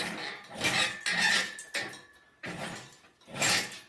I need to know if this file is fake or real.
real